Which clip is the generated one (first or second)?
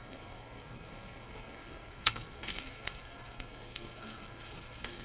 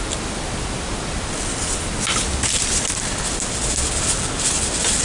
first